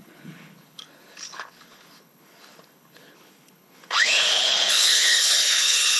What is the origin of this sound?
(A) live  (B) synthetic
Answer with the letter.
B